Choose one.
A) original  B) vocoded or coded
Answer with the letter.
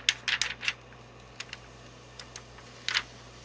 A